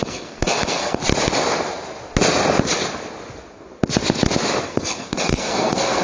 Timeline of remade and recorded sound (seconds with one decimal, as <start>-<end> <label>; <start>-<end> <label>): 0.0-1.0 remade; 1.0-4.6 recorded; 4.6-6.0 remade